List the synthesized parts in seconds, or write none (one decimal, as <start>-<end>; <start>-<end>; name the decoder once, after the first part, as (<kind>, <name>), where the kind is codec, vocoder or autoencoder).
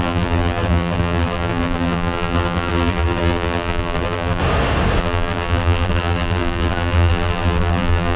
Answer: 0.0-4.4 (vocoder, BigVGAN v2); 5.0-8.2